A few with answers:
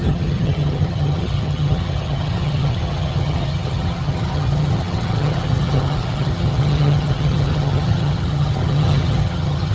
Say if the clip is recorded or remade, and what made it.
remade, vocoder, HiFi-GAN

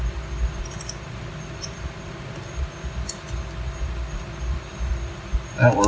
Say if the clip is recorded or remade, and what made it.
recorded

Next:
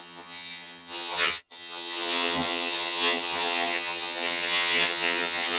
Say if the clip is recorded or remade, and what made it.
remade, vocoder, HiFi-GAN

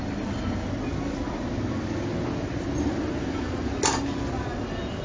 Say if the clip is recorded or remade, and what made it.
recorded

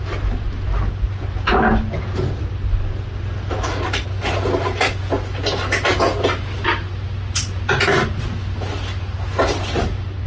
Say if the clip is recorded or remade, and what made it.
recorded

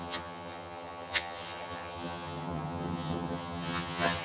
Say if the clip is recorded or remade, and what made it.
remade, vocoder, HiFi-GAN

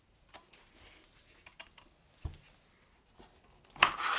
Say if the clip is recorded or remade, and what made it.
recorded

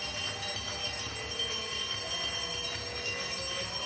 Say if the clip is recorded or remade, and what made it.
recorded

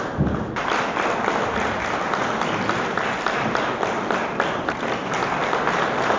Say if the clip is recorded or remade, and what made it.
recorded